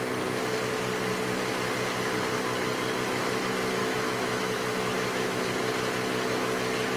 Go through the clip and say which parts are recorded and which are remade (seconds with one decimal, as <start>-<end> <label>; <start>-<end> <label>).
0.0-3.8 recorded; 3.8-5.4 remade; 5.4-7.0 recorded